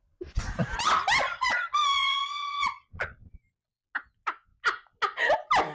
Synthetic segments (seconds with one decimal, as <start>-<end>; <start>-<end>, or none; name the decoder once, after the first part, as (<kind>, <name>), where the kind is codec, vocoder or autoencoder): 1.2-3.4 (vocoder, Vocos)